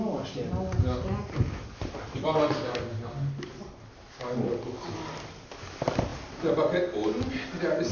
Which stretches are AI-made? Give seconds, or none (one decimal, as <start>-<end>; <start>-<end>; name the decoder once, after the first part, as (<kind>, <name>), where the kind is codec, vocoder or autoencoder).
none